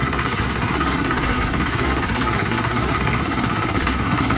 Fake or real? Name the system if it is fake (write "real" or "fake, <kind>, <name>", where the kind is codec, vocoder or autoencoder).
fake, codec, SNAC